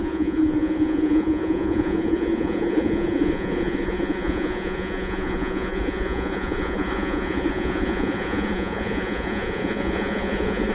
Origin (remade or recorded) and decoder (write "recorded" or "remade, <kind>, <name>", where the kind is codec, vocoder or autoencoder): remade, vocoder, Vocos